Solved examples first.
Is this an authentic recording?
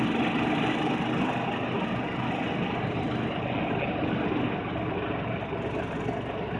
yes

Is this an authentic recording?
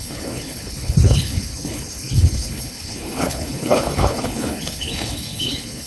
no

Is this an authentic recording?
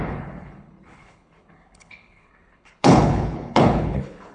no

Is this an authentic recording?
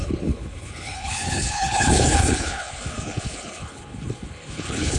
no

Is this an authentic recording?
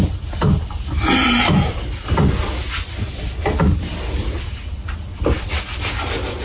yes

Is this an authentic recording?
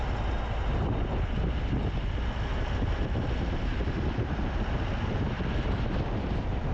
yes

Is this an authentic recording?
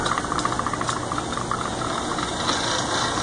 yes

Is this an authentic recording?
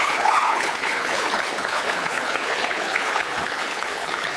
no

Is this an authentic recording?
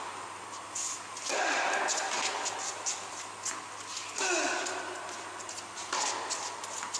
yes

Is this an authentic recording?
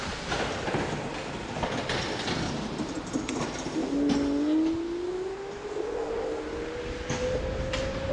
yes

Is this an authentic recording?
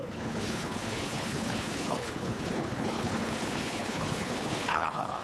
no